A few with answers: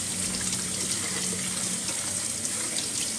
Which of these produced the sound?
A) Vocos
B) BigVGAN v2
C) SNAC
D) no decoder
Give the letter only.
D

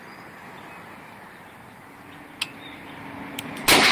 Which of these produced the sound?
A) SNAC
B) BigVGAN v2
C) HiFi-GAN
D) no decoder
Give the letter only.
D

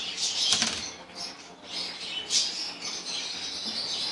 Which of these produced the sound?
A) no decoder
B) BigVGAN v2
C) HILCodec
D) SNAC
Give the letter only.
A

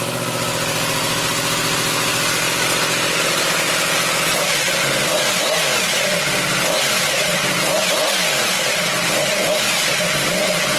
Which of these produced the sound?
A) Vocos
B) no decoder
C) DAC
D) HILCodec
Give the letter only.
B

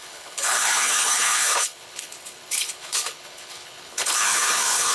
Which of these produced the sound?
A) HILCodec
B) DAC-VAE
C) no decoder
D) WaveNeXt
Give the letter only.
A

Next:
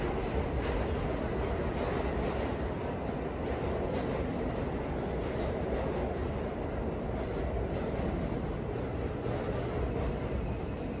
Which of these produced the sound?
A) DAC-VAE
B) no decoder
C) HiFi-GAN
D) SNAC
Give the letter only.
B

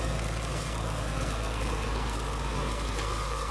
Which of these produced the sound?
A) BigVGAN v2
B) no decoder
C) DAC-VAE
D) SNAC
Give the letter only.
D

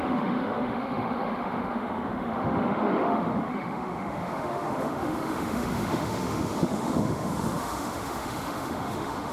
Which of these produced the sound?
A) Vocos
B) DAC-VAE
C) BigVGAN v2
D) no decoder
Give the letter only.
B